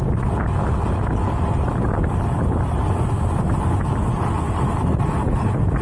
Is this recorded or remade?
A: recorded